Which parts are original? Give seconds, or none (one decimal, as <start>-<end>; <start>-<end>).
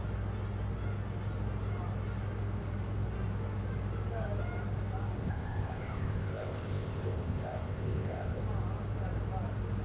0.0-5.2; 8.4-9.8